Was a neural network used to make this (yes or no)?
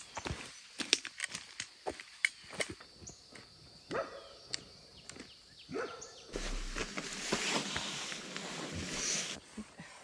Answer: no